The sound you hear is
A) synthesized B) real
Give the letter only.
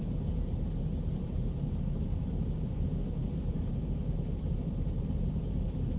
A